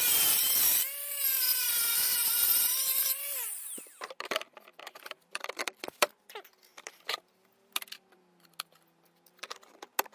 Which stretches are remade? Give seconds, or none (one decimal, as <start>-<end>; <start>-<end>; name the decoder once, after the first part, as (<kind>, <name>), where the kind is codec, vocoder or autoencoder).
4.7-6.1 (vocoder, BigVGAN v2)